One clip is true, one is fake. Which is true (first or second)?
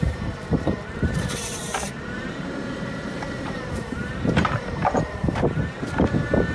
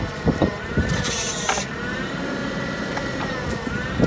second